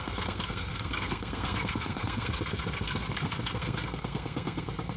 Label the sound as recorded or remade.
remade